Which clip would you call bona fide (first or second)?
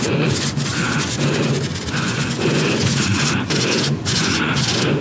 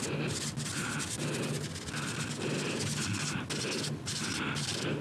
second